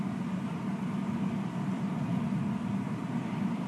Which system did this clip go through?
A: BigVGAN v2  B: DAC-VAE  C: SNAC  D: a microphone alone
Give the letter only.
D